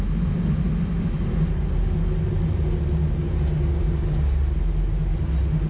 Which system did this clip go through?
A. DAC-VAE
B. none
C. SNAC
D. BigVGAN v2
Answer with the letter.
B